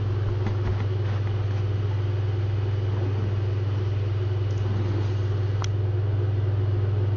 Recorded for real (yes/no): yes